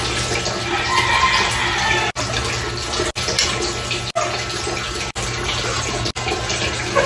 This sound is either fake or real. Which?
real